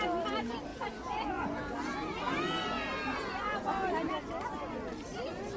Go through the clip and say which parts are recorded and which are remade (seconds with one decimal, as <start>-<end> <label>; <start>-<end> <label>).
0.0-0.7 recorded; 0.7-4.1 remade; 4.1-5.6 recorded